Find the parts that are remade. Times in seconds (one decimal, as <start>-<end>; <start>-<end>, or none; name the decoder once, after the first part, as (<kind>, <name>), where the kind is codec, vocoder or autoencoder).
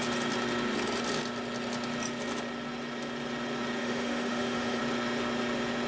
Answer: 3.8-4.8 (autoencoder, DAC-VAE)